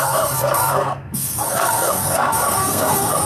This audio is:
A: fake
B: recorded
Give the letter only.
A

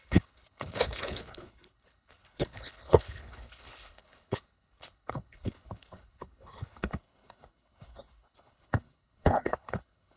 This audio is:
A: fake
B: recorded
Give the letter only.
A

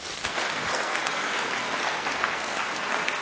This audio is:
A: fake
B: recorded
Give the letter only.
A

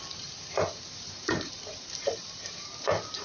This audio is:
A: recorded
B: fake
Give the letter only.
B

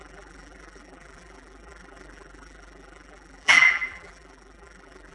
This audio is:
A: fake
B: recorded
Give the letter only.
A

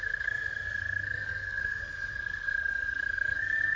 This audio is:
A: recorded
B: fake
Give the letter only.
B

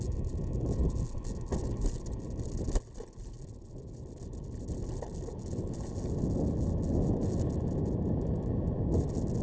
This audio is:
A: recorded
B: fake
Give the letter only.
A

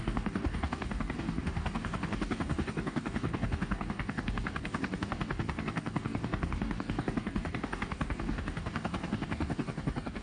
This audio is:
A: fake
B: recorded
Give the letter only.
A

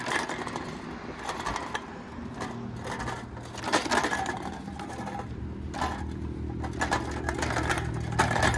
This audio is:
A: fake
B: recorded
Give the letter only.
B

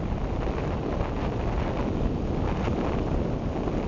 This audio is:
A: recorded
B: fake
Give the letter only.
A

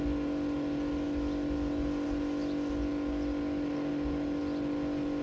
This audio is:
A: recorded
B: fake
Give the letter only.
A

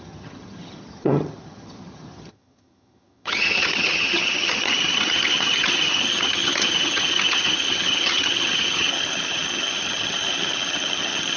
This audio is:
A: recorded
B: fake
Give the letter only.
B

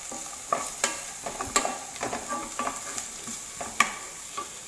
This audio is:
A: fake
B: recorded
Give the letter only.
B